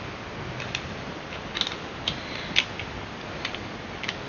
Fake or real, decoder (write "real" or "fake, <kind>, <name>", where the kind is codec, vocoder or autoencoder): real